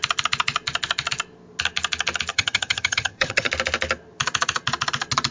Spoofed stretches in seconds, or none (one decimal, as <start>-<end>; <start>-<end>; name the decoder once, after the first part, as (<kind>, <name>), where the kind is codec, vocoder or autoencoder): 2.3-3.5 (vocoder, HiFi-GAN)